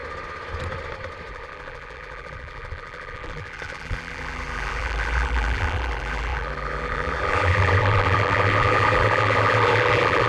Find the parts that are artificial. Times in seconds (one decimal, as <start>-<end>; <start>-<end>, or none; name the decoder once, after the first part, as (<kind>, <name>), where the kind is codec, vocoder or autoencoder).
1.3-10.3 (vocoder, BigVGAN v2)